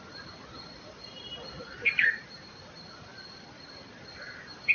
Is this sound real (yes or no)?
no